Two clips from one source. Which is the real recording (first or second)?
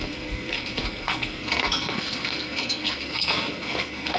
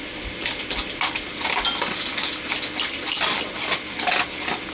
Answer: second